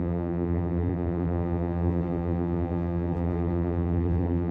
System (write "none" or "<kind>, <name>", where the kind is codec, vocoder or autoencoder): vocoder, BigVGAN v2